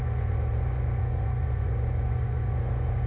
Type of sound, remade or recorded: remade